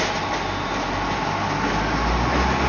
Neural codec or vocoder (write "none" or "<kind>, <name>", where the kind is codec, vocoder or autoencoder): none